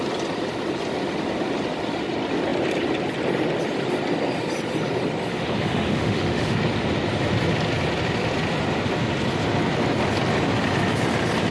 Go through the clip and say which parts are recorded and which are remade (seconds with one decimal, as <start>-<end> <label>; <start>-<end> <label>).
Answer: 0.0-5.3 recorded; 5.3-6.6 remade; 6.6-11.5 recorded